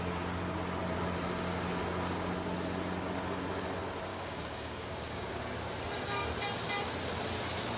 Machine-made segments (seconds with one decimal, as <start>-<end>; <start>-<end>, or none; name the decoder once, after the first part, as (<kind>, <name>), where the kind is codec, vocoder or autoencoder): 4.1-5.3 (codec, DAC)